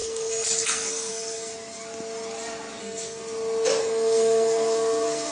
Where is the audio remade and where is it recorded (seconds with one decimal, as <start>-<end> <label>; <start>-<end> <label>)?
0.0-1.5 remade; 1.5-2.8 recorded; 2.8-3.2 remade; 3.2-3.8 recorded; 3.8-5.3 remade